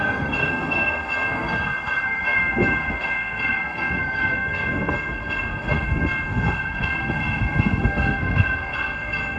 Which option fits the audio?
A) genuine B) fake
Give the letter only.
B